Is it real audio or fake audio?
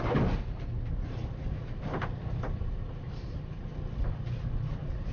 real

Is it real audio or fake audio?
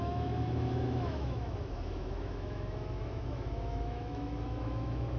fake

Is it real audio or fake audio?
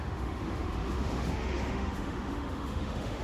fake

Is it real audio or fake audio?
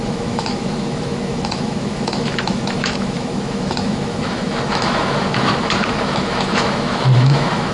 fake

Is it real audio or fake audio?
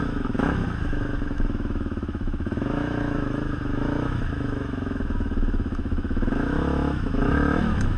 fake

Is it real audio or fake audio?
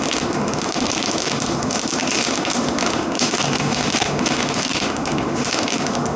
fake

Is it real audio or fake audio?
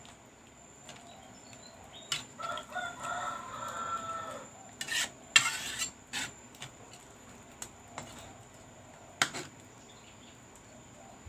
real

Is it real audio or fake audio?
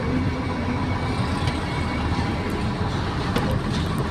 real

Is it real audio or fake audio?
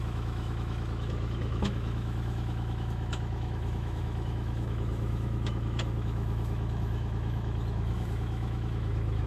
fake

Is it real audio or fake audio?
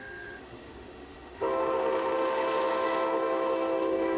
fake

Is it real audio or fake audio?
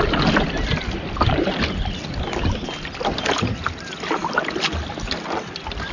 real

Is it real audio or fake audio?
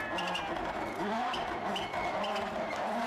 real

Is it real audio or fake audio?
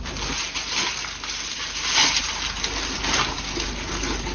real